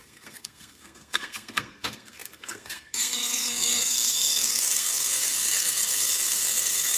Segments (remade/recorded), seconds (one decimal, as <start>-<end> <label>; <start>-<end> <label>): 0.0-7.0 remade